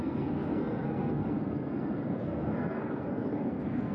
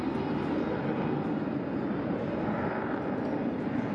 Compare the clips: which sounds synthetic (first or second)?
first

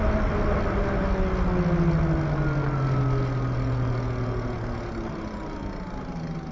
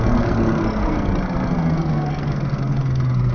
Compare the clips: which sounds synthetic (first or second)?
second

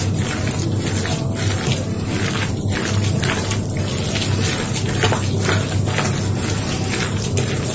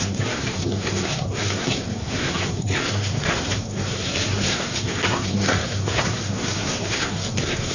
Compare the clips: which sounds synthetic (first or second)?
second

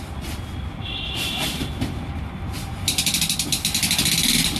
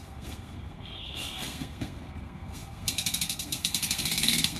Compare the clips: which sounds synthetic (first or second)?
second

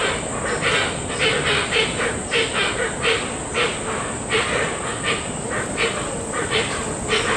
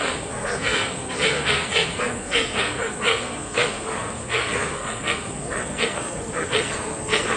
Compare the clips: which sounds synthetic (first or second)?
second